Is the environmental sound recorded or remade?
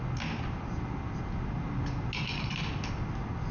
recorded